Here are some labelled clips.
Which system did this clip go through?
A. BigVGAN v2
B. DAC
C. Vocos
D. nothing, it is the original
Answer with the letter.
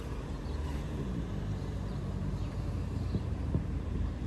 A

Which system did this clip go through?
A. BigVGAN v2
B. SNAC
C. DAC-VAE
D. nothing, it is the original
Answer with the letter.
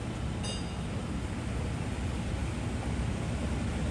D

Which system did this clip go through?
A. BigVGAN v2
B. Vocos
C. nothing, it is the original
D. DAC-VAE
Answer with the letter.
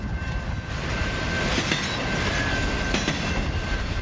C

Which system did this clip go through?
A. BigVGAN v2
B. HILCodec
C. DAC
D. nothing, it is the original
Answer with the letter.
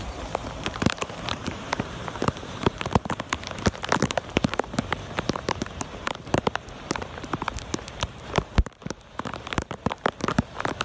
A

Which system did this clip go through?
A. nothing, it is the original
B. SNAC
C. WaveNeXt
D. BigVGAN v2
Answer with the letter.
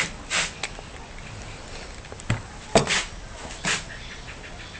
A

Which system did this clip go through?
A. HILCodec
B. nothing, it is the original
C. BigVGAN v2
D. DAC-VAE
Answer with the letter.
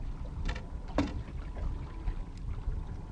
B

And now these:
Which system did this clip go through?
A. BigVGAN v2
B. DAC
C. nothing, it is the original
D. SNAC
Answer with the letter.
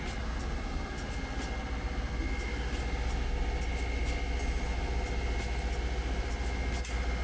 C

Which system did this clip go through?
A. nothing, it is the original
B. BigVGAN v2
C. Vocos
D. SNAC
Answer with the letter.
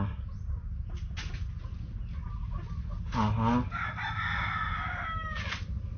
A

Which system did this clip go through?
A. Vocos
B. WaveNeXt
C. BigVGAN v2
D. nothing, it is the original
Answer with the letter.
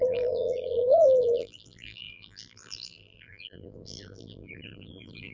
C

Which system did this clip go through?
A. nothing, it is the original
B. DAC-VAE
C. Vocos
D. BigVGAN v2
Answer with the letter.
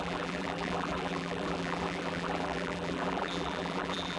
D